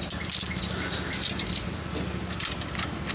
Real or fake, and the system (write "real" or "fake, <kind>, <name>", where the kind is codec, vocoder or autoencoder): real